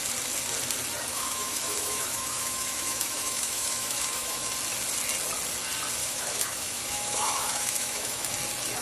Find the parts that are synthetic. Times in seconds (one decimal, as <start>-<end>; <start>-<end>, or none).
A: 1.1-4.5; 6.0-8.3